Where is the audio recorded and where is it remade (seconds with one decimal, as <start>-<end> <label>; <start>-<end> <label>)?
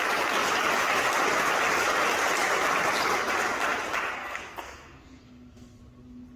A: 0.0-4.2 recorded; 4.2-5.8 remade; 5.8-6.4 recorded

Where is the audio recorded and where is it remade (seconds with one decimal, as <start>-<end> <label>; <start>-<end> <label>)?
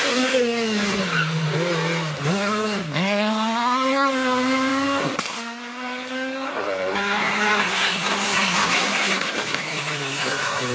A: 0.0-1.0 remade; 1.0-2.2 recorded; 2.2-10.7 remade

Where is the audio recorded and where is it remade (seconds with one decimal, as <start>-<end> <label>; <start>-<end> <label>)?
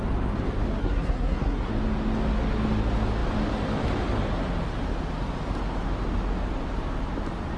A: 0.0-0.8 recorded; 0.8-1.7 remade; 1.7-7.6 recorded